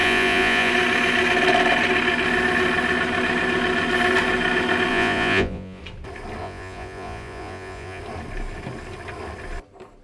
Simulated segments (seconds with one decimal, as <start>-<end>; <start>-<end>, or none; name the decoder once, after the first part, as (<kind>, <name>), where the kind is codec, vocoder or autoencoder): 0.0-0.7 (vocoder, Vocos); 4.9-5.8; 6.4-8.0